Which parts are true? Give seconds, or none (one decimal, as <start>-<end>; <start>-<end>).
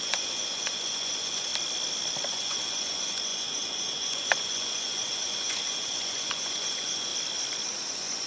1.5-2.3; 7.1-7.9